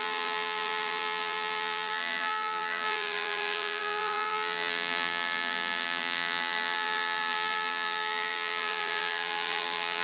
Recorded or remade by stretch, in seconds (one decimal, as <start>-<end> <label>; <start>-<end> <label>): 0.0-10.0 remade